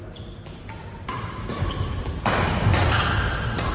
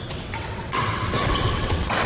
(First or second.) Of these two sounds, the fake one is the second